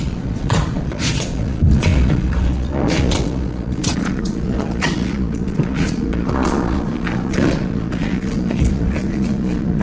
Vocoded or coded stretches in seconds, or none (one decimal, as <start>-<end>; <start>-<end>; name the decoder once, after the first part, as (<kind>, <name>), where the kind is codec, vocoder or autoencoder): 0.0-9.8 (vocoder, Vocos)